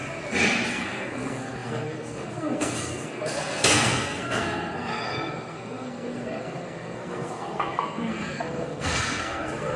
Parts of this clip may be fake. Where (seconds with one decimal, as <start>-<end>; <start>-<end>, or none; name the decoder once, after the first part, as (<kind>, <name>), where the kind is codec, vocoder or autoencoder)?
0.7-9.8 (codec, SNAC)